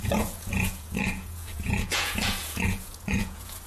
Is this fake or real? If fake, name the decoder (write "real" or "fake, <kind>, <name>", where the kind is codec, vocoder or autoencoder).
fake, vocoder, Vocos